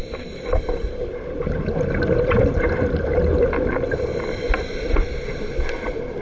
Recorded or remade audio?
recorded